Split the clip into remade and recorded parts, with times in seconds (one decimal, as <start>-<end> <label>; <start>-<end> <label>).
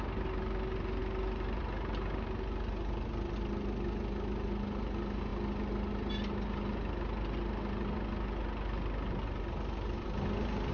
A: 0.0-10.7 recorded